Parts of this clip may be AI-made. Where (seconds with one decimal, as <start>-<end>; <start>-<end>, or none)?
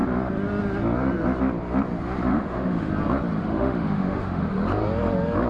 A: 2.3-2.9; 3.4-4.4